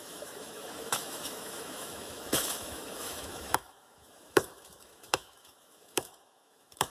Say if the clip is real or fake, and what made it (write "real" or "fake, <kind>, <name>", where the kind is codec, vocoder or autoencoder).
fake, autoencoder, DAC-VAE